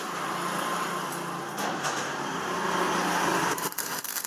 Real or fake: real